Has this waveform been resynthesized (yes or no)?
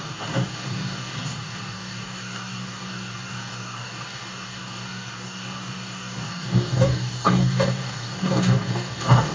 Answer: yes